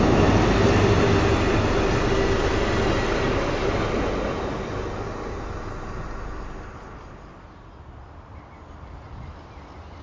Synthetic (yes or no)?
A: no